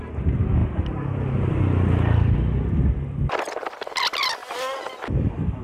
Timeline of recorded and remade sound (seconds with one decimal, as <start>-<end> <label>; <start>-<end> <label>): 0.0-5.6 recorded